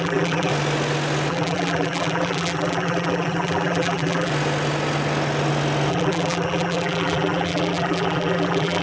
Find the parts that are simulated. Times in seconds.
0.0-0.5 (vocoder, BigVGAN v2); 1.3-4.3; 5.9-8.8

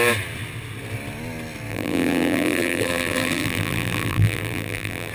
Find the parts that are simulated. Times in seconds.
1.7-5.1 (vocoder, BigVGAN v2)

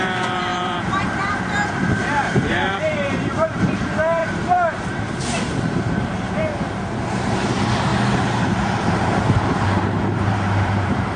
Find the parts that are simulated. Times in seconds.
0.0-11.2 (vocoder, BigVGAN v2)

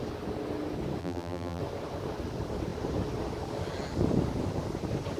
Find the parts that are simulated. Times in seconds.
1.0-1.6 (vocoder, BigVGAN v2)

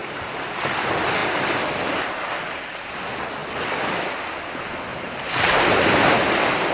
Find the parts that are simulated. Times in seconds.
0.0-0.6 (vocoder, BigVGAN v2); 4.9-6.7